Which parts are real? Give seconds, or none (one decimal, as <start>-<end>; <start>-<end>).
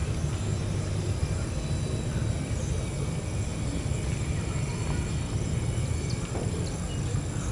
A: 1.7-7.5